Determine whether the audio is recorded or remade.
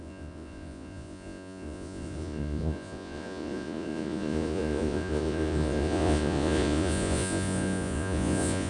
remade